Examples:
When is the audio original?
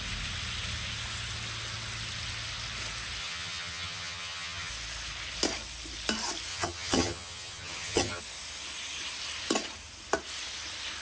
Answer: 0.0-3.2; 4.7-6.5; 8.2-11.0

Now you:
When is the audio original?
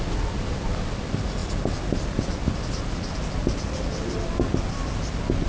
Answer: 0.0-5.5